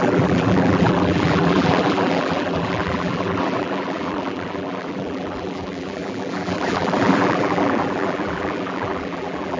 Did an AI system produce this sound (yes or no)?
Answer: yes